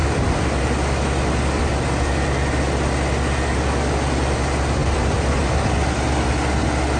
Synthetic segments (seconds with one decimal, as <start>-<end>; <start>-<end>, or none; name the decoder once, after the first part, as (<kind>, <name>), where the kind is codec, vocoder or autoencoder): none